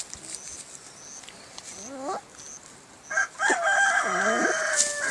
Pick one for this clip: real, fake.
real